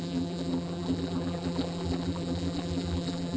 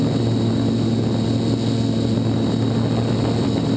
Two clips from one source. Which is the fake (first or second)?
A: first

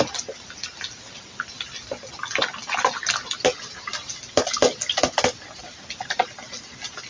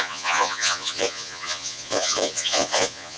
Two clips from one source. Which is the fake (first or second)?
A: second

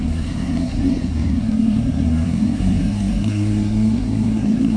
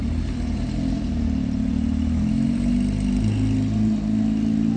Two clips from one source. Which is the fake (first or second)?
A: first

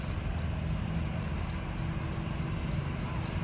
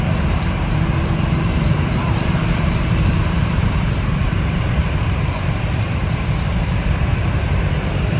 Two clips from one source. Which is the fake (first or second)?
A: second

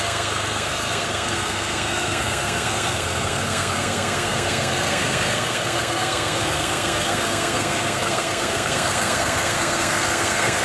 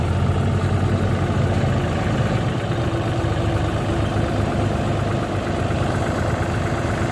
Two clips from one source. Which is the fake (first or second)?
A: first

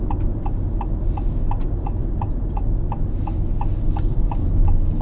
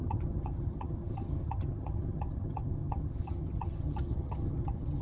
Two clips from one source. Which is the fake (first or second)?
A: second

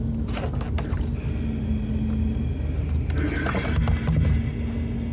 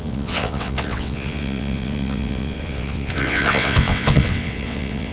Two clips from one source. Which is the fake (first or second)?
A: second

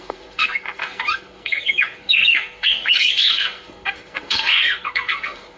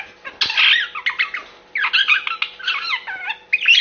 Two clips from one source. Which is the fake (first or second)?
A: first